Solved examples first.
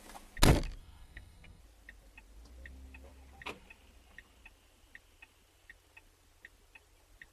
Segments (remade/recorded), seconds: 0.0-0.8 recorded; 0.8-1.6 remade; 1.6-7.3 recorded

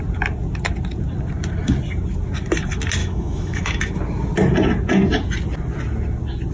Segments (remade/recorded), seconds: 0.0-3.0 recorded; 3.0-3.8 remade; 3.8-6.5 recorded

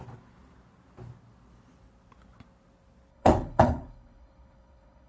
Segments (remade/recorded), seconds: 0.0-3.1 recorded; 3.1-5.1 remade